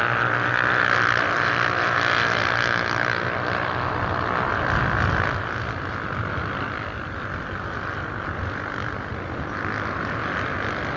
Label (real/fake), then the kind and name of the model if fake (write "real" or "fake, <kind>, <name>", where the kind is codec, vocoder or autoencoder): real